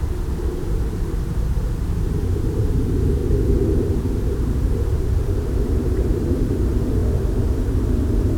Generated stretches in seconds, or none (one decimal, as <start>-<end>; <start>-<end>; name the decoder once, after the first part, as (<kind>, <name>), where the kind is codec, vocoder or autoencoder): 0.0-3.2 (vocoder, BigVGAN v2); 3.8-7.0; 8.0-8.4